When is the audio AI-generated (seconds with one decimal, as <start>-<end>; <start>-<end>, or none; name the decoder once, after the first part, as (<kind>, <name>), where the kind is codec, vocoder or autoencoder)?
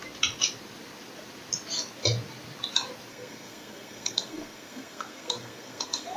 3.1-6.2 (codec, SNAC)